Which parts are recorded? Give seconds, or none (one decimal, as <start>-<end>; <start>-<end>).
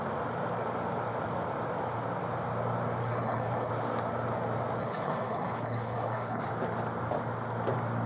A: 0.0-3.0; 3.7-4.8; 6.4-8.1